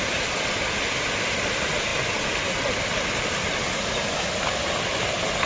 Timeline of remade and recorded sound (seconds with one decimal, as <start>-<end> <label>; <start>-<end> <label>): 0.0-5.5 recorded